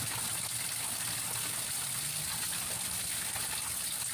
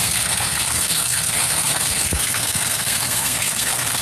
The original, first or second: first